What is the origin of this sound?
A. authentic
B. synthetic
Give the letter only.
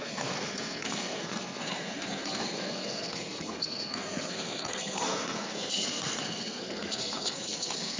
B